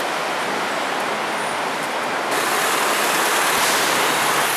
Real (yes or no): yes